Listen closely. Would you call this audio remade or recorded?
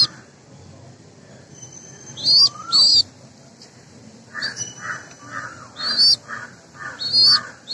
recorded